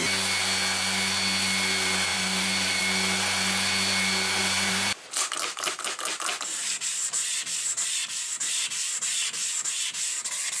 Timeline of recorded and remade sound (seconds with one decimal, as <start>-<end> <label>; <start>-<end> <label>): 0.0-2.1 recorded; 2.1-2.8 remade; 2.8-4.4 recorded; 4.4-5.8 remade; 5.8-10.6 recorded